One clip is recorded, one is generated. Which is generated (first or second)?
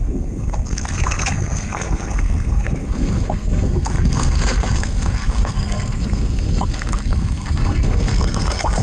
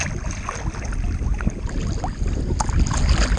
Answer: first